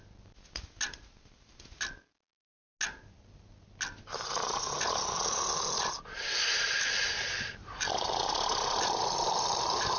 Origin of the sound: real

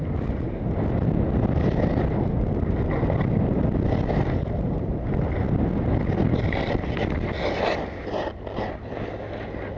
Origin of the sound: real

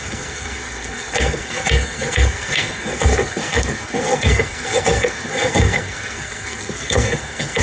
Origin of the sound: fake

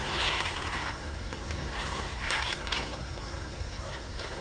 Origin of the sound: fake